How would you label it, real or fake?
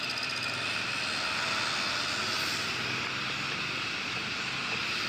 real